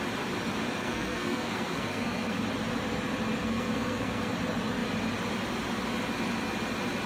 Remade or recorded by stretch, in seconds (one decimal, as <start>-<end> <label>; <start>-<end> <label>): 0.0-0.8 recorded; 0.8-2.4 remade; 2.4-3.4 recorded; 3.4-4.3 remade; 4.3-7.1 recorded